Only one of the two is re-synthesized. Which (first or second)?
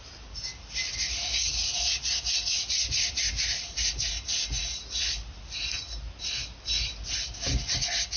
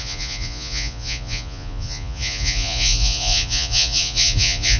second